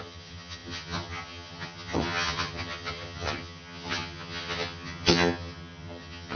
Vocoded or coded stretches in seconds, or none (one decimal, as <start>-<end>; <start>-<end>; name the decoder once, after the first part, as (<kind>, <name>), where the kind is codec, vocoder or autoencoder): 0.0-6.4 (vocoder, HiFi-GAN)